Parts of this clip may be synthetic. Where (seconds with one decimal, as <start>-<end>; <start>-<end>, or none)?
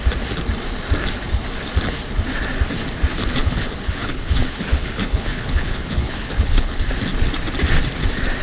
3.4-6.9